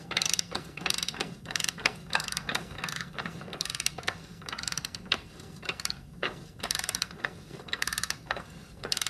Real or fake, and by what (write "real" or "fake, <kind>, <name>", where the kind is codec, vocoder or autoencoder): fake, codec, SNAC